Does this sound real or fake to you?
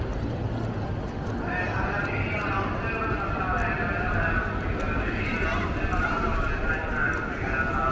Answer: real